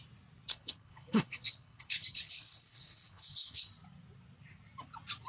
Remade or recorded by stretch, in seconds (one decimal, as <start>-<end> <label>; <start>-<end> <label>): 0.0-0.5 recorded; 0.5-3.7 remade; 3.7-5.3 recorded